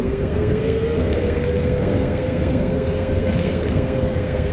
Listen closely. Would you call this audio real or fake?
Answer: fake